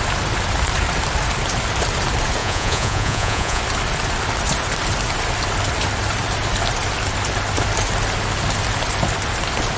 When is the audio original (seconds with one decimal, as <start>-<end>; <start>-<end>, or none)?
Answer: 0.0-2.4; 3.6-9.8